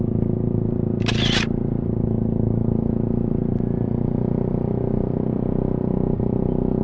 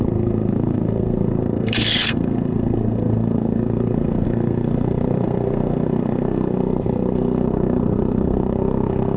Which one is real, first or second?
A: first